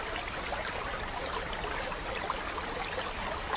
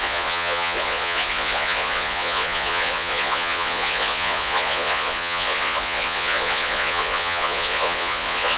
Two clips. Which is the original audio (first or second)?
first